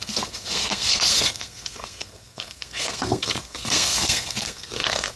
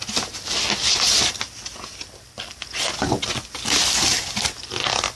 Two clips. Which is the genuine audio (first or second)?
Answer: second